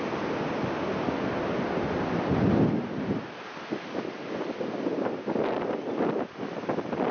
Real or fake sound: real